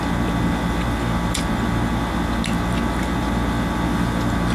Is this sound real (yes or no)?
yes